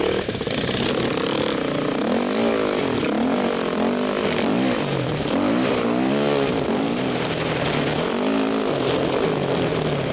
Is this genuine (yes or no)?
yes